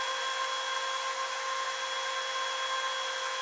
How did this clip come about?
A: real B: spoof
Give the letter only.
A